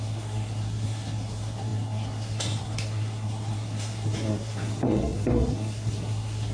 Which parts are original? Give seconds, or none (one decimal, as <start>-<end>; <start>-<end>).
none